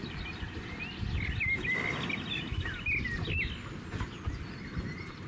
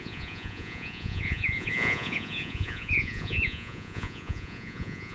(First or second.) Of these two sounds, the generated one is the second